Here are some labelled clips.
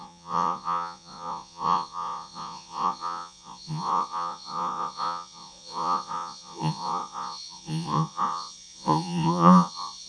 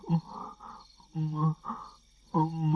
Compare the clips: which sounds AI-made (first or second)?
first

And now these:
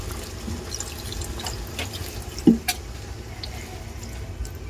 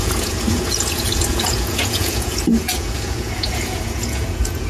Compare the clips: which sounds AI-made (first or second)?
second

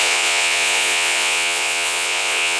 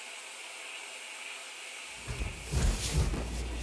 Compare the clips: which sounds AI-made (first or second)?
first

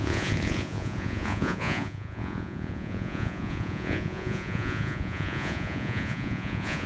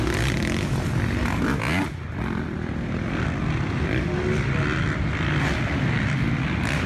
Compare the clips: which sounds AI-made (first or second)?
first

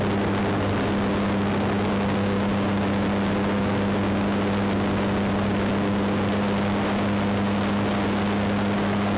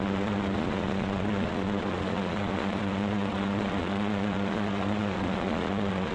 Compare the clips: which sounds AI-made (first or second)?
second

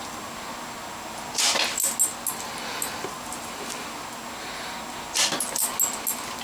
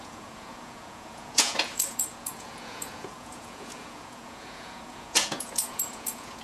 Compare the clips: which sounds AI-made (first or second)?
second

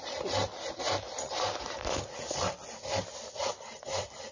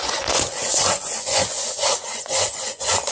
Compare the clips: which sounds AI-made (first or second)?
second